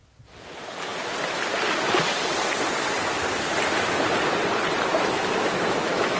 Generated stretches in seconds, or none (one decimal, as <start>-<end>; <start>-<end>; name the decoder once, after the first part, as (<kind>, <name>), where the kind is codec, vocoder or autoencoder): 4.9-6.2 (autoencoder, DAC-VAE)